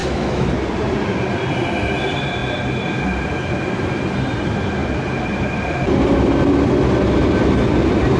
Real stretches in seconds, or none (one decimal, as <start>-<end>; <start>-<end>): 0.5-8.2